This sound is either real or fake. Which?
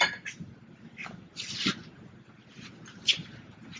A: real